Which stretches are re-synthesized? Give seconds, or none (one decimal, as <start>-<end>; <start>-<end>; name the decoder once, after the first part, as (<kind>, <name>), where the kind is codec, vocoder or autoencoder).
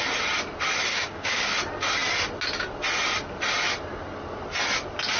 0.9-1.5 (codec, DAC)